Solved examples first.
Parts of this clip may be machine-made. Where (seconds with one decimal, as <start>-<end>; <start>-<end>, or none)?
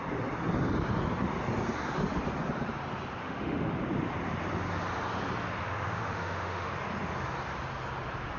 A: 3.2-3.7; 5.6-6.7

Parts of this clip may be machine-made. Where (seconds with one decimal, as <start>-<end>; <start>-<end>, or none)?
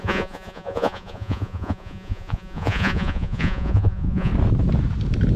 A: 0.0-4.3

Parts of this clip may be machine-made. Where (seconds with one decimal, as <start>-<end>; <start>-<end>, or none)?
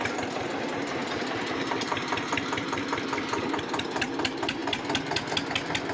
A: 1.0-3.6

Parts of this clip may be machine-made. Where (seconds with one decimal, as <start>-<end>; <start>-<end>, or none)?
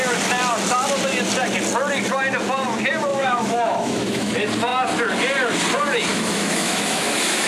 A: 3.1-4.3; 6.1-7.5